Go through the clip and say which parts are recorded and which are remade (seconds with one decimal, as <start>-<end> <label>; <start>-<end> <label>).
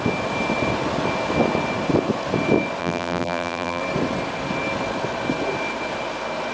0.0-2.8 recorded; 2.8-3.8 remade; 3.8-6.5 recorded